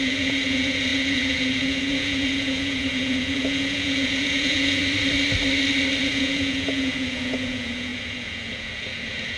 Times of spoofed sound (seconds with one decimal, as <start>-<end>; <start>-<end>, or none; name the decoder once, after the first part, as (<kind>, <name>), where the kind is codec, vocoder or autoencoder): 0.0-4.8 (vocoder, Vocos); 6.0-9.4